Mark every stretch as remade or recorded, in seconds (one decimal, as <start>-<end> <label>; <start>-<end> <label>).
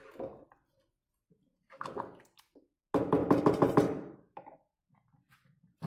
0.0-3.2 recorded; 3.2-4.4 remade; 4.4-5.9 recorded